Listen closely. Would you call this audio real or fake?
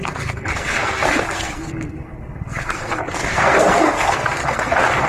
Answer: fake